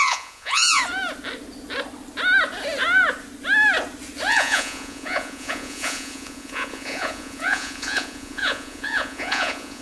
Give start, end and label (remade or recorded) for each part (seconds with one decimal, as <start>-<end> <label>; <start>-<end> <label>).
0.0-0.8 remade; 0.8-4.3 recorded; 4.3-9.8 remade